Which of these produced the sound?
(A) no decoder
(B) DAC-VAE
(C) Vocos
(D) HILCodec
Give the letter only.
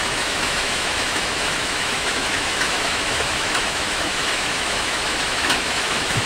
B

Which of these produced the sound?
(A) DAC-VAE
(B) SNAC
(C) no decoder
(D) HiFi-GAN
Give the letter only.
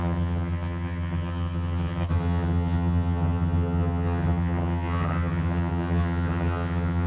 D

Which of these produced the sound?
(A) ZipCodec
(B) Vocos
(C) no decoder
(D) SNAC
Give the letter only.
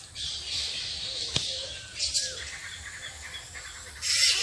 C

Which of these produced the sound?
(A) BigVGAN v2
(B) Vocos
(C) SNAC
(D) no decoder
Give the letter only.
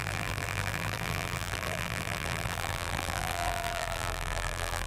A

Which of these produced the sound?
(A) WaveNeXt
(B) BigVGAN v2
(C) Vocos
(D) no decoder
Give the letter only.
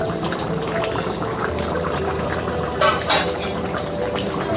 B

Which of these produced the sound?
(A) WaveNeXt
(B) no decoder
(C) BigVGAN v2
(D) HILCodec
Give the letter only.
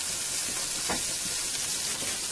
B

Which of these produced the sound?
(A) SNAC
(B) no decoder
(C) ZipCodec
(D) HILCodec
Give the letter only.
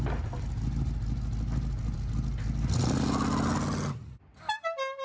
B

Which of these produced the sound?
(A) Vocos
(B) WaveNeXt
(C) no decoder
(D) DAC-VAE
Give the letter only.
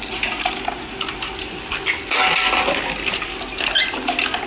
C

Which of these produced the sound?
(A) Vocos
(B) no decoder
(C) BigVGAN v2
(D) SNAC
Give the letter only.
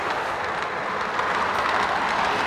B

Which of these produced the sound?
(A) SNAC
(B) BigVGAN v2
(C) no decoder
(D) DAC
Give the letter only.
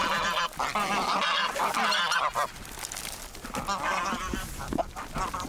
C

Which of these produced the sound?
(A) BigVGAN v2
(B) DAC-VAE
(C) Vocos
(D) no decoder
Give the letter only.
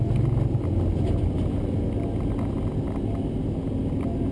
D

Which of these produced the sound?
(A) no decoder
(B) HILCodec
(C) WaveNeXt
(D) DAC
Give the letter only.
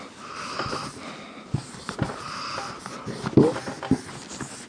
A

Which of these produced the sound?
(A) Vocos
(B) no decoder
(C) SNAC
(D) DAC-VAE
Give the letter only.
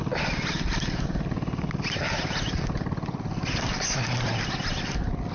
B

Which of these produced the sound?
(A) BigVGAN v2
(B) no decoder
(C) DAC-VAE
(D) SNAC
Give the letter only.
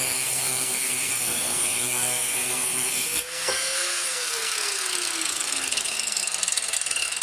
D